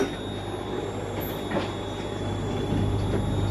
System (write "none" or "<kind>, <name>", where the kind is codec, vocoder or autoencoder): none